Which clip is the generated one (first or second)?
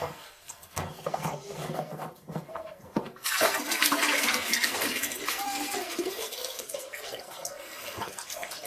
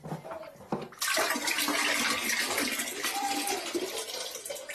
first